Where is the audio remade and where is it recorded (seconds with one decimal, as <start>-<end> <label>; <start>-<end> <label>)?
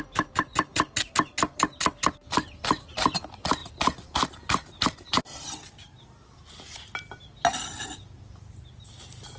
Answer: 0.0-9.4 recorded